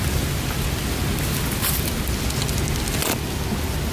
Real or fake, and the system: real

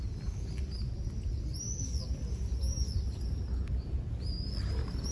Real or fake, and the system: real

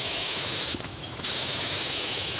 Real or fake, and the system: fake, autoencoder, DAC-VAE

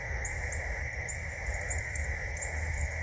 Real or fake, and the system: real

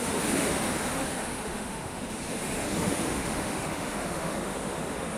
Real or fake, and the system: fake, autoencoder, DAC-VAE